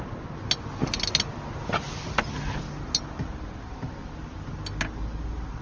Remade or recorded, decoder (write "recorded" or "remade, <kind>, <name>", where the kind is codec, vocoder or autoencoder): recorded